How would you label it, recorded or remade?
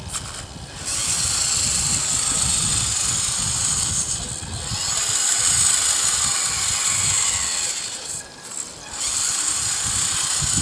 recorded